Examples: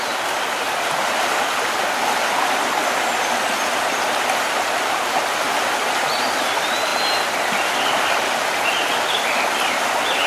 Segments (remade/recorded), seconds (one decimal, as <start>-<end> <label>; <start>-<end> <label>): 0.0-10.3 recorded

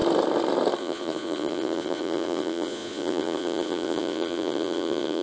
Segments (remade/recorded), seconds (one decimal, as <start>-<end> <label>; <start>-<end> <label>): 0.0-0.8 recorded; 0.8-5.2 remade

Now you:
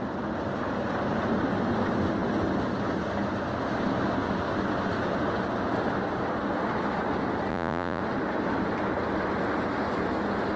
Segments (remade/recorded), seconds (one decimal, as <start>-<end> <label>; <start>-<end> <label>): 0.0-7.5 recorded; 7.5-8.0 remade; 8.0-10.6 recorded

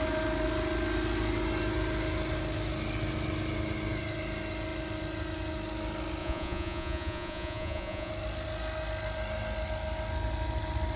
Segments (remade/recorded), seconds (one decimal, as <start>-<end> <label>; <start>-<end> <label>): 0.0-6.2 recorded; 6.2-8.1 remade; 8.1-11.0 recorded

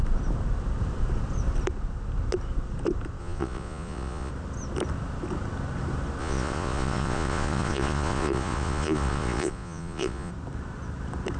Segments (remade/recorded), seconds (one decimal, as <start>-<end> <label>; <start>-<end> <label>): 0.0-3.2 recorded; 3.2-4.3 remade; 4.3-6.2 recorded; 6.2-10.3 remade; 10.3-11.4 recorded